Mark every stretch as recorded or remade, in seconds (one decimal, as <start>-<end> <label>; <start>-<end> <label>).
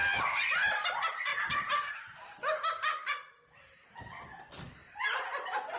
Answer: 0.0-1.3 recorded; 1.3-4.0 remade; 4.0-4.8 recorded; 4.8-5.8 remade